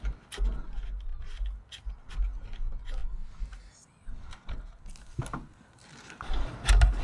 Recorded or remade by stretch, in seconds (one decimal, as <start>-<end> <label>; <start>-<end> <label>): 0.0-7.0 recorded